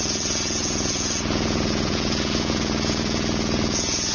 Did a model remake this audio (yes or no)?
yes